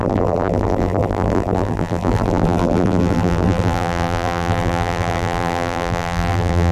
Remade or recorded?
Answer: remade